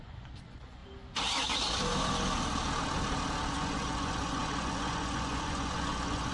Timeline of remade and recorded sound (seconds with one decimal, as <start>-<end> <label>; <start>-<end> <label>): 0.0-0.8 remade; 0.8-3.5 recorded; 3.5-6.3 remade